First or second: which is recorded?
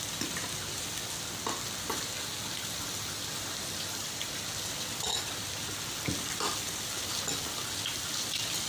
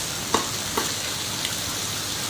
second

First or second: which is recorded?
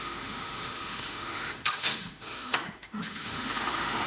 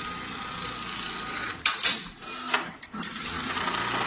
second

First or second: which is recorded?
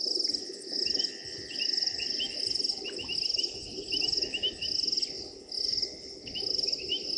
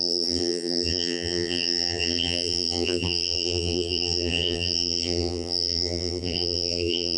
first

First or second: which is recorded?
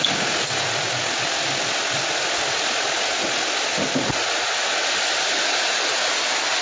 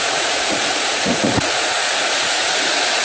first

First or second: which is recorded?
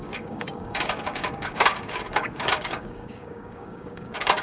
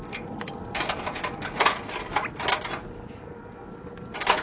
second